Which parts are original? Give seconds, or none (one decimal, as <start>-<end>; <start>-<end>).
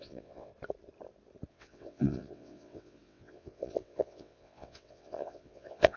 0.5-1.5